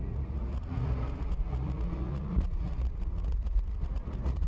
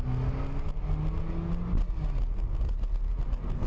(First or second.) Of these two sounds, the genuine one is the second